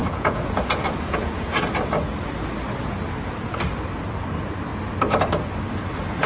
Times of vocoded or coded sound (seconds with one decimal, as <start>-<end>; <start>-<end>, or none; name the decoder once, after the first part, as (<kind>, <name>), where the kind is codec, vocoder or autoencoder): 0.0-1.7 (vocoder, Vocos)